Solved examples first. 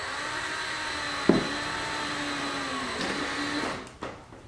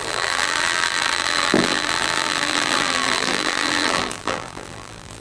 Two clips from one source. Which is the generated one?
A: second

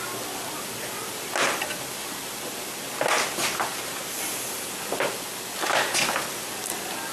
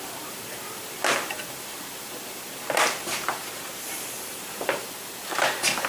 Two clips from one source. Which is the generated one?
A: second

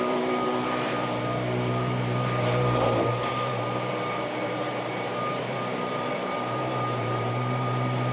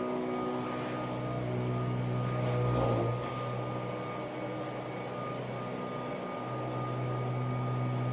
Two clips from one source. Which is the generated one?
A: first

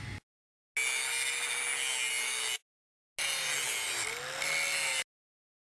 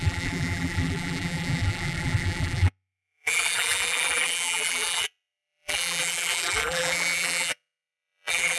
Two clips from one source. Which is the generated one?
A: second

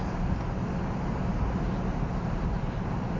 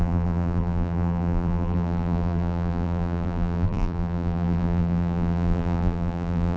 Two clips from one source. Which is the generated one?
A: second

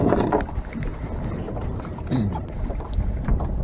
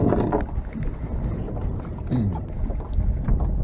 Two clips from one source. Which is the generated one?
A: first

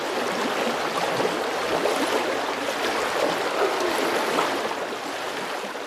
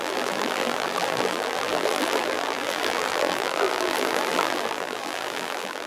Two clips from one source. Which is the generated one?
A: second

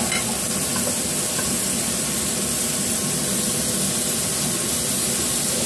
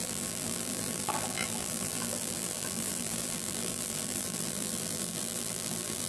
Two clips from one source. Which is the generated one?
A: second